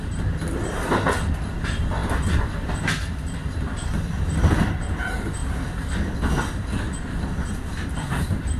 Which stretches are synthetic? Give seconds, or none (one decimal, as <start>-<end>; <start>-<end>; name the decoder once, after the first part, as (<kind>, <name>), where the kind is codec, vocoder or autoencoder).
none

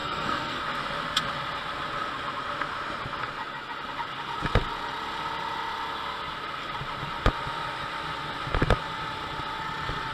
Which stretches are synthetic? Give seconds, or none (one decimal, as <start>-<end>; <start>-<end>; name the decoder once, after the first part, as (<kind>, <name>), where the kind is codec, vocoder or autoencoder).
0.0-0.6 (codec, SNAC)

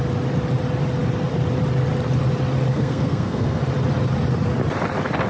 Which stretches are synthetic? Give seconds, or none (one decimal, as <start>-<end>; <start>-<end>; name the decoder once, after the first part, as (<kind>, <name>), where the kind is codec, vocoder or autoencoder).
2.7-3.6 (codec, SNAC)

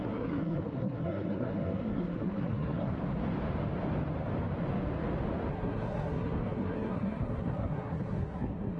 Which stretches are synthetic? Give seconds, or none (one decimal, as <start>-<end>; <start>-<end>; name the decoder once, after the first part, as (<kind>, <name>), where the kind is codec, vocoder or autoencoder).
0.0-2.9 (codec, SNAC); 5.5-8.8

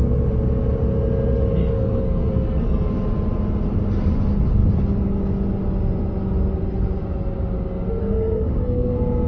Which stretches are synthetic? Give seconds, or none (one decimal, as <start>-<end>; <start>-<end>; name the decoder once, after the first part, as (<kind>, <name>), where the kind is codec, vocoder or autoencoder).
1.6-2.9 (codec, SNAC); 8.0-8.9

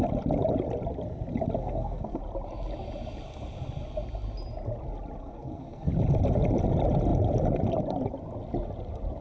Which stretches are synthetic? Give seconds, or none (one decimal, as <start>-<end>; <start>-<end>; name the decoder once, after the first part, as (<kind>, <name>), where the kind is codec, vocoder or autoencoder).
1.6-2.2 (codec, SNAC); 5.2-5.9

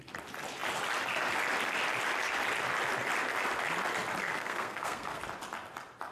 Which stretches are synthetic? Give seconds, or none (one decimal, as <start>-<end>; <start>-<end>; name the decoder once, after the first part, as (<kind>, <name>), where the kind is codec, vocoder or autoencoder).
4.2-5.2 (codec, SNAC)